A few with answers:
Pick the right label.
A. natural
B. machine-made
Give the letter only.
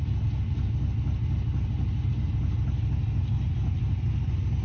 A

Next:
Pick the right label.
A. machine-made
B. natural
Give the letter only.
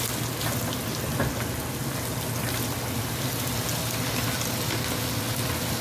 B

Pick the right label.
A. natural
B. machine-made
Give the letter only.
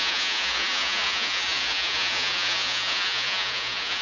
B